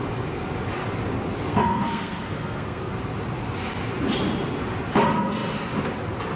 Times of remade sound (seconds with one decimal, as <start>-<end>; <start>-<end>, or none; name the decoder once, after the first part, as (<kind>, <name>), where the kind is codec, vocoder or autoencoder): 1.5-2.9 (codec, SNAC)